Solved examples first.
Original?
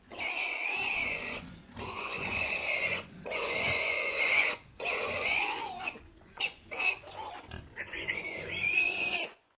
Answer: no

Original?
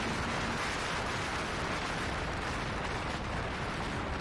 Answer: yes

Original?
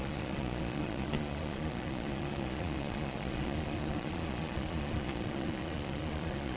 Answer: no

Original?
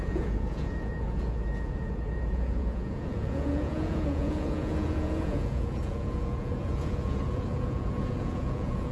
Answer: no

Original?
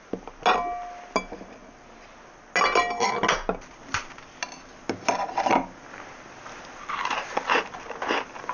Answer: yes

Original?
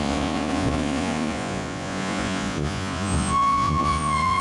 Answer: no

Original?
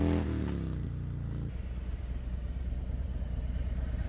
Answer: yes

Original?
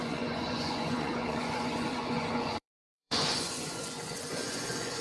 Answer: no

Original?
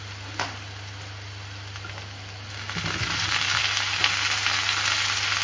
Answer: yes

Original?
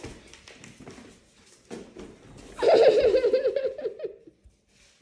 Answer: yes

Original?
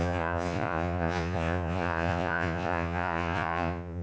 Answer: no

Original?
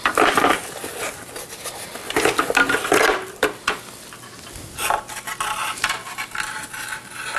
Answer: yes